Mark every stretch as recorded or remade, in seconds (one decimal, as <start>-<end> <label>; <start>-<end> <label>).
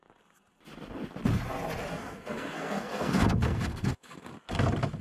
0.0-1.9 recorded; 1.9-4.3 remade; 4.3-5.0 recorded